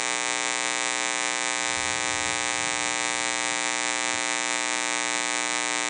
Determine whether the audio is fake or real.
real